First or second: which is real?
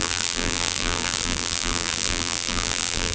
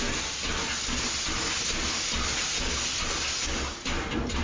second